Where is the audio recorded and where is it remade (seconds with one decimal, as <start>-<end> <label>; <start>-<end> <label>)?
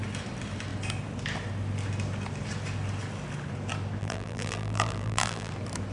0.0-4.0 recorded; 4.0-5.5 remade; 5.5-5.9 recorded